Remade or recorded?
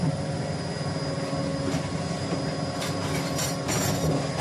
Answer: recorded